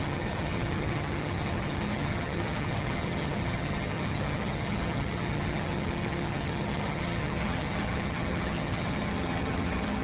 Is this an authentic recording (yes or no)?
no